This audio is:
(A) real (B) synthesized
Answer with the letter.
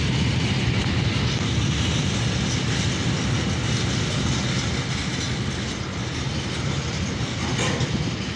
A